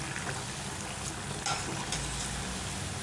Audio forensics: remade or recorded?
recorded